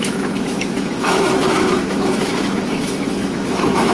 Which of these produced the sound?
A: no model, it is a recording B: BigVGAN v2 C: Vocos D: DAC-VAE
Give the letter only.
D